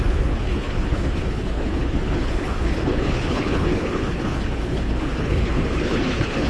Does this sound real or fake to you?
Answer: fake